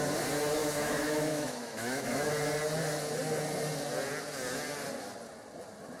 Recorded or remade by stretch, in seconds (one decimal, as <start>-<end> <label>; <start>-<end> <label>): 0.0-0.6 recorded; 0.6-2.3 remade; 2.3-6.0 recorded